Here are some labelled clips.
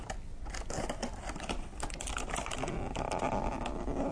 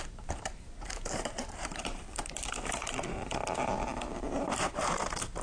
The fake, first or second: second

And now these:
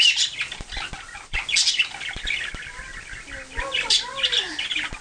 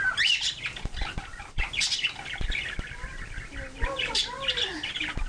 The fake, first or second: second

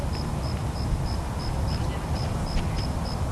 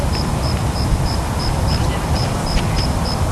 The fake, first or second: second